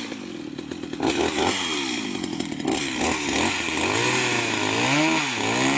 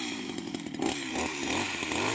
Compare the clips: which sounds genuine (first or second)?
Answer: first